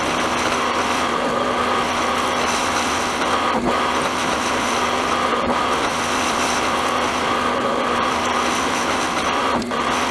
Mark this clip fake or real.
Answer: fake